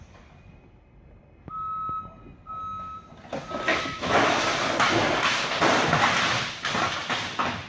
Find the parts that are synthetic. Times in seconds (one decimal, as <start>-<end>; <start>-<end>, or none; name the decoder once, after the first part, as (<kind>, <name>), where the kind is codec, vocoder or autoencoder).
3.7-4.4 (autoencoder, DAC-VAE)